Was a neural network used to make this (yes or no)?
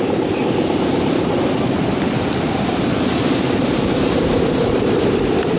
no